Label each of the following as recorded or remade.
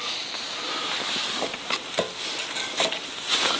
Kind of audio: recorded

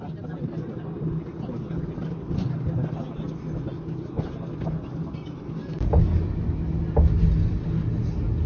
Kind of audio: recorded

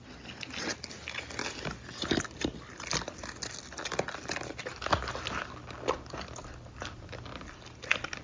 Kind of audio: recorded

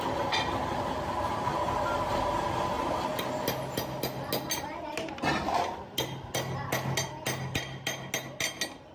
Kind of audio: recorded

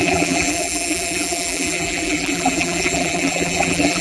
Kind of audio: remade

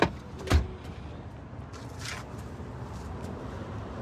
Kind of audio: recorded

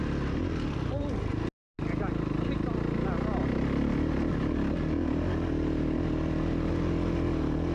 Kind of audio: recorded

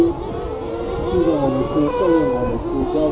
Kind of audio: recorded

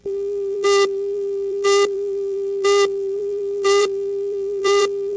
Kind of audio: remade